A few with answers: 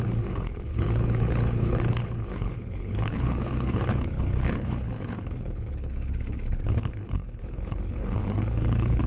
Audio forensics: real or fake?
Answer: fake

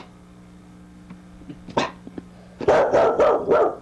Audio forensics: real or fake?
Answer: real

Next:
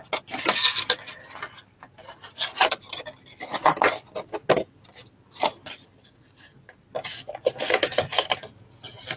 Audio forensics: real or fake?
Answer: real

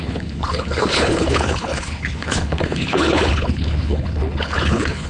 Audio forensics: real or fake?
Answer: fake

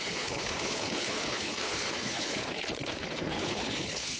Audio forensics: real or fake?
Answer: fake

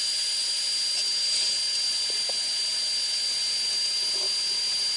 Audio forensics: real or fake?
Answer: real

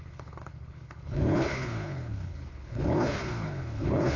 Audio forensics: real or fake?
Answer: fake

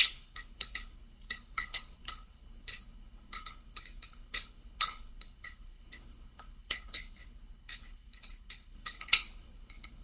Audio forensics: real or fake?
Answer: fake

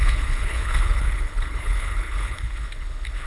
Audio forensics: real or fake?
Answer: fake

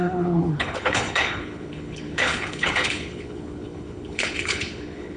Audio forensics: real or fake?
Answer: fake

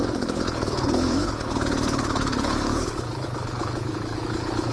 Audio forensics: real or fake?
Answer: fake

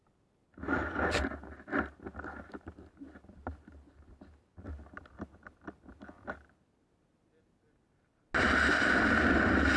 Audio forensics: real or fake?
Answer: real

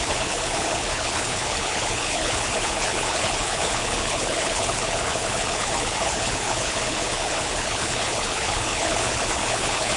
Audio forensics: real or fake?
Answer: fake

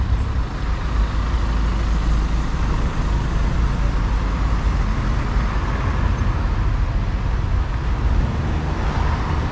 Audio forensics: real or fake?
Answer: real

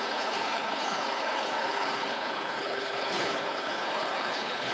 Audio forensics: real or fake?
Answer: fake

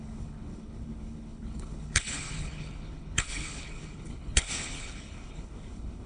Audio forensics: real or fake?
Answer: fake